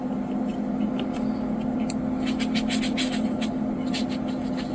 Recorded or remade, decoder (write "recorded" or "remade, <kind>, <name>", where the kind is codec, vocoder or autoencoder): recorded